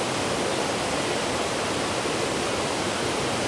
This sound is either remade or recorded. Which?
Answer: recorded